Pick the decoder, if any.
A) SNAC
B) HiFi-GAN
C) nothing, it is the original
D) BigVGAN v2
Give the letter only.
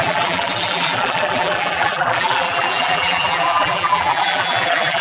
D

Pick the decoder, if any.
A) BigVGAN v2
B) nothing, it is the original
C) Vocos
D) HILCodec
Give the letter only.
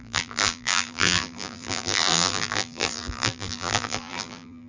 A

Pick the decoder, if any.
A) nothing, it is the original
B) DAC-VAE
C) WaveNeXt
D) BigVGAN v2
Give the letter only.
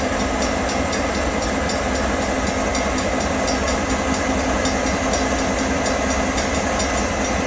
A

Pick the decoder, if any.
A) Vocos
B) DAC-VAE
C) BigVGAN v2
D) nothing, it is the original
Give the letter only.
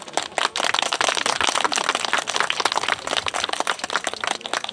D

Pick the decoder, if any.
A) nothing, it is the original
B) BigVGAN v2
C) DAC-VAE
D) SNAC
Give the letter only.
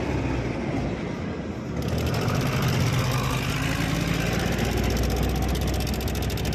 A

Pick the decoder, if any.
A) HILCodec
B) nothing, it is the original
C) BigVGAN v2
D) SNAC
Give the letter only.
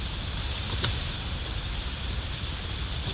C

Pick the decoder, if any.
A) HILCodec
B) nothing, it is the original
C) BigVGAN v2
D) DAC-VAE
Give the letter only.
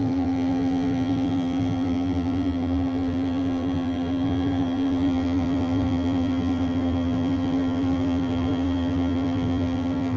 C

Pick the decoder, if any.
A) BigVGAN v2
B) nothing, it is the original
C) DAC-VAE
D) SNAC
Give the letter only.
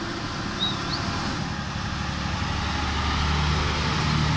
B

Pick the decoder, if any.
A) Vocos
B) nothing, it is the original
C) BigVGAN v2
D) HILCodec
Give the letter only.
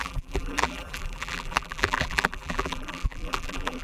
C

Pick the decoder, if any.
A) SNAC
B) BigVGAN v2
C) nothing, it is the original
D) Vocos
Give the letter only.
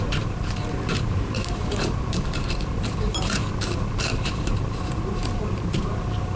B